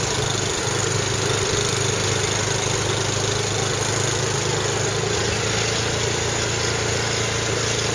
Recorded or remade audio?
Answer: recorded